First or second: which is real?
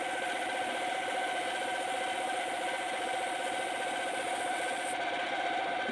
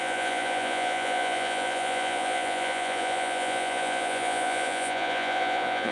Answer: first